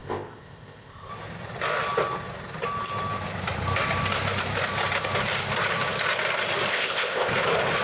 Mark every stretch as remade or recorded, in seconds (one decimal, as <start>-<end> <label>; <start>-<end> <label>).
0.0-1.1 remade; 1.1-6.7 recorded; 6.7-7.3 remade; 7.3-7.8 recorded